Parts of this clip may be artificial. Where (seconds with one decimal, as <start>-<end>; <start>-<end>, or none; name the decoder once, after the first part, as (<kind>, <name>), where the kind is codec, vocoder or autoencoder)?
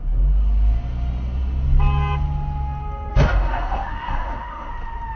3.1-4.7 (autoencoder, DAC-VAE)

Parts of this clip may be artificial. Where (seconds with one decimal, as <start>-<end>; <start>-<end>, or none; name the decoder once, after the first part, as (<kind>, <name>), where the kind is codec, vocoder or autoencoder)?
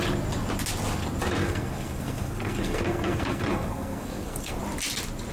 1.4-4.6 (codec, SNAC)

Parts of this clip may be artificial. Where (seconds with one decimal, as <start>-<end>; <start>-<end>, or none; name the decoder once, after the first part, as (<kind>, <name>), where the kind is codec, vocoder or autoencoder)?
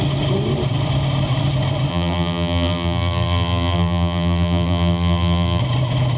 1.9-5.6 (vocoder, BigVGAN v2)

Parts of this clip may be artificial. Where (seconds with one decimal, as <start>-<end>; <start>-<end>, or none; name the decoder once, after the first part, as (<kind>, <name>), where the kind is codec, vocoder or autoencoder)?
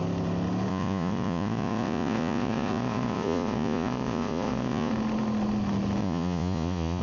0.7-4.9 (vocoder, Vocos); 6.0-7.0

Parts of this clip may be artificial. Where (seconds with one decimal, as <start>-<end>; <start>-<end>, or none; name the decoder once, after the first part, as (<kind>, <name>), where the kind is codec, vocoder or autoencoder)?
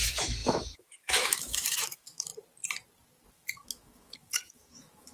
0.0-2.3 (autoencoder, DAC-VAE); 3.3-5.1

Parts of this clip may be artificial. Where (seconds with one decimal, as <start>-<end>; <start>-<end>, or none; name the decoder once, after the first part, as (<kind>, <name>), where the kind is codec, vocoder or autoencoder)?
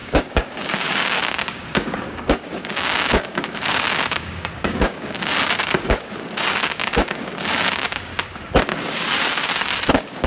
0.0-8.1 (codec, DAC); 9.9-10.3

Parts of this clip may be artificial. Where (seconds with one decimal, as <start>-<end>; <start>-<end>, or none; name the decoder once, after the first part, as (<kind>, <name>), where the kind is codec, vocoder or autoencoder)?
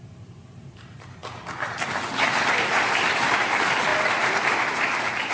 0.0-1.2 (vocoder, BigVGAN v2); 2.5-5.3